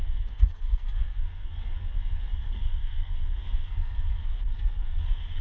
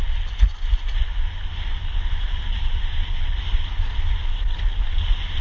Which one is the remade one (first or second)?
first